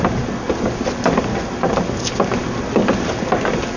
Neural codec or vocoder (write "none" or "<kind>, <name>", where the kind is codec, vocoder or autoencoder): none